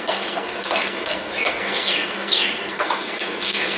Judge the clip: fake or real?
fake